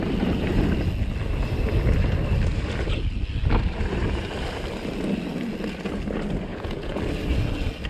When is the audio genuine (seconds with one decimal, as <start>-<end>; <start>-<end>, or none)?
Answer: 0.0-6.5; 7.0-7.9